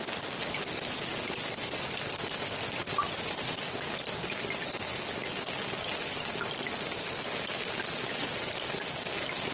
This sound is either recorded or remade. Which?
recorded